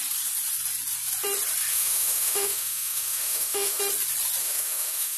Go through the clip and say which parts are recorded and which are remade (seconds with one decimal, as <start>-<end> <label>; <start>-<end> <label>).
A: 0.0-1.7 recorded; 1.7-3.8 remade; 3.8-4.4 recorded; 4.4-5.2 remade